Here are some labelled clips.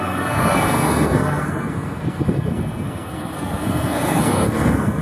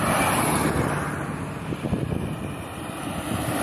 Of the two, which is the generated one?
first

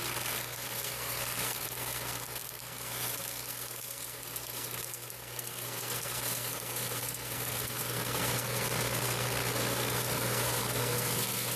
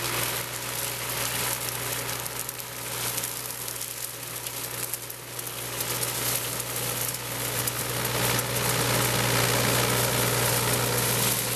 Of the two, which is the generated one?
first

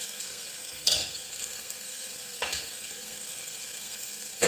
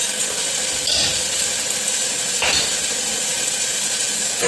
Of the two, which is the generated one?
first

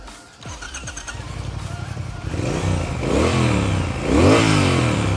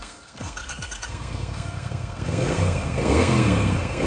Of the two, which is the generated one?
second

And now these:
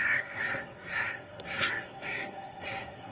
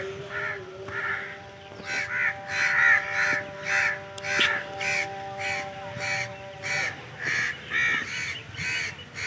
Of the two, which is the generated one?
first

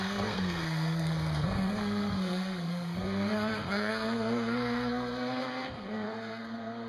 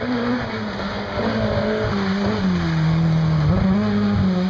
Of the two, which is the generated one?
first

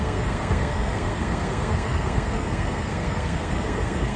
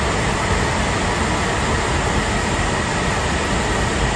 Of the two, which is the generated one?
first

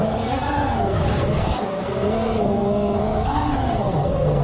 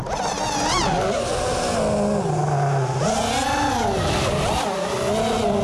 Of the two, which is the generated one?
first